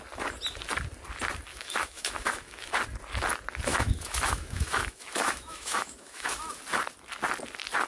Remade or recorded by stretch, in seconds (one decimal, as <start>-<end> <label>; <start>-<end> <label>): 0.0-1.5 recorded; 1.5-2.7 remade; 2.7-3.7 recorded; 3.7-6.6 remade; 6.6-7.9 recorded